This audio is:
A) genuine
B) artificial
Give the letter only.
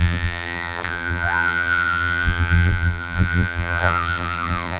B